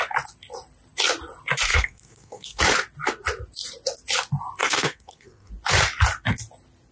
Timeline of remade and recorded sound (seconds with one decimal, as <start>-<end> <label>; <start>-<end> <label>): 0.0-1.7 recorded; 1.7-2.6 remade; 2.6-4.6 recorded; 4.6-5.5 remade; 5.5-6.9 recorded